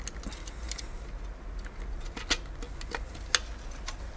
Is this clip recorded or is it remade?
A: recorded